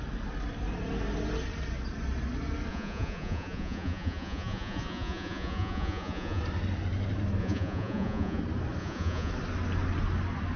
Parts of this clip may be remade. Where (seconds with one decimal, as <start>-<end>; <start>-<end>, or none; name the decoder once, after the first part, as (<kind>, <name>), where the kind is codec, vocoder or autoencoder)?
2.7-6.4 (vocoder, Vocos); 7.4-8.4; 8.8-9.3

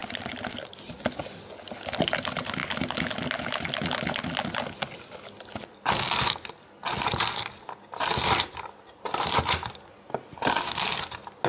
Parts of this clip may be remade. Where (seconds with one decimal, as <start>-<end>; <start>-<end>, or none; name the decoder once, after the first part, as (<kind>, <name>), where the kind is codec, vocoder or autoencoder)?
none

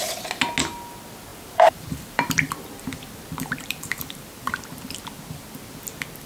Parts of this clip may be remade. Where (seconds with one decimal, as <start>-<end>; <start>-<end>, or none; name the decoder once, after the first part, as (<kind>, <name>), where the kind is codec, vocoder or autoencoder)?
1.3-2.7 (vocoder, BigVGAN v2); 3.3-4.5

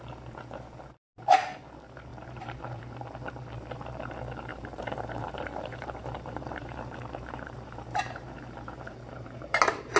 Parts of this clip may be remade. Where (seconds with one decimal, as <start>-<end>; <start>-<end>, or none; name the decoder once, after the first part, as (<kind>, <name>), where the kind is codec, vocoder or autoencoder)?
2.1-2.8 (vocoder, BigVGAN v2); 4.5-9.6